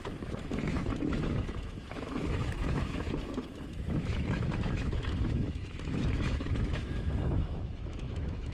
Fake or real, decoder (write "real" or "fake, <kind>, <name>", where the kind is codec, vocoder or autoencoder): fake, autoencoder, DAC-VAE